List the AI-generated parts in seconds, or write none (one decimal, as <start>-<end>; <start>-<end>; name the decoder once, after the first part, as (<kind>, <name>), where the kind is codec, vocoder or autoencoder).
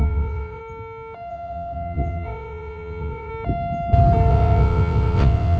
0.0-0.6 (vocoder, WaveNeXt); 1.3-3.3; 4.3-5.6